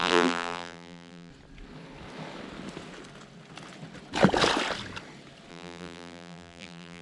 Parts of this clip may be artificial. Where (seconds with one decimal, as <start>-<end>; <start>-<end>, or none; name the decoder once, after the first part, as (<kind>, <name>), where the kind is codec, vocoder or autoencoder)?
0.0-1.3 (vocoder, BigVGAN v2); 5.5-7.0